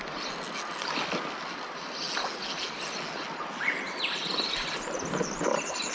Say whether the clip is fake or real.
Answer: real